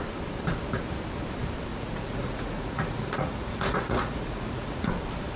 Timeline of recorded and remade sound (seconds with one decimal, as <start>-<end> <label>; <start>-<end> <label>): 0.0-1.7 recorded; 1.7-4.9 remade; 4.9-5.4 recorded